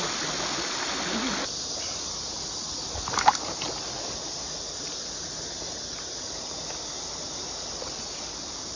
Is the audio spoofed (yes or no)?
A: no